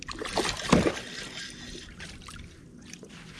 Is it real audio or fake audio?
real